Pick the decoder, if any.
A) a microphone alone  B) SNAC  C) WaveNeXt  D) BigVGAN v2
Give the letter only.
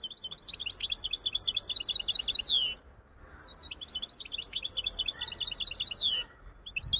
A